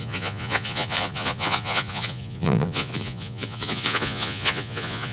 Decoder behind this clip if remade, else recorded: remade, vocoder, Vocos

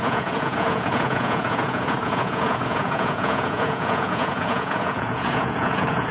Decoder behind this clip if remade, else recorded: remade, vocoder, Vocos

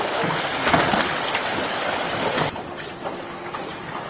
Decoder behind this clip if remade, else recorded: recorded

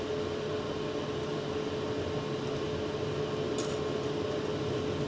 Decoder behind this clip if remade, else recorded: recorded